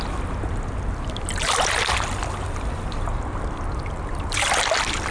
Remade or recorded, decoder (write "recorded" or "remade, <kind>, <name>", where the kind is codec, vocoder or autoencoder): recorded